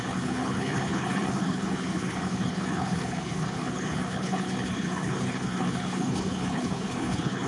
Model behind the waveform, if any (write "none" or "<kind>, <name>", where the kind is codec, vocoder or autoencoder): codec, HILCodec